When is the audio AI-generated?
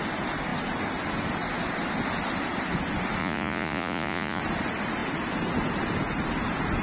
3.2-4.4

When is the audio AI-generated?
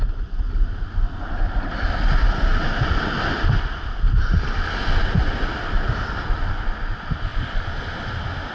none